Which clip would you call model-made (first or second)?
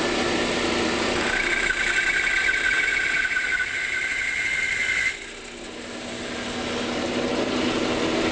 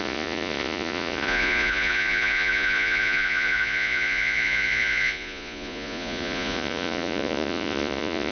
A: second